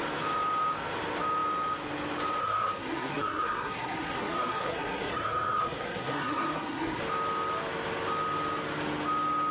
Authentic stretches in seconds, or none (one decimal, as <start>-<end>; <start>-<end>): 0.0-2.4; 7.0-9.5